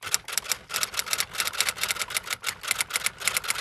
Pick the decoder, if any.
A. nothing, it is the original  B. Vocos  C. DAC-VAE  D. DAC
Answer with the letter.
A